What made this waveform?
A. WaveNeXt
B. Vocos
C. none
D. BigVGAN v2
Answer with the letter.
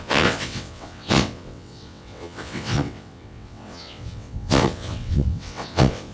A